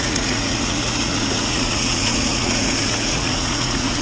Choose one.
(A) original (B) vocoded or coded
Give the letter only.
B